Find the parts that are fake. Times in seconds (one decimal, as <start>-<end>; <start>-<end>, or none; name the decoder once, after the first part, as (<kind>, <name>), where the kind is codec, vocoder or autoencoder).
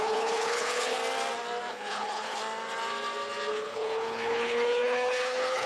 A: 0.0-1.0 (codec, HILCodec); 1.7-2.4; 3.5-5.7